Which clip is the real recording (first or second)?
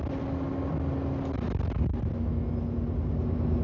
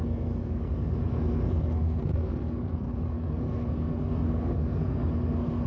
first